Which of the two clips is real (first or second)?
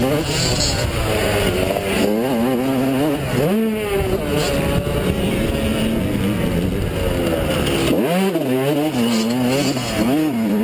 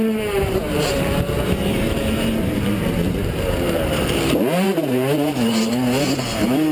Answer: first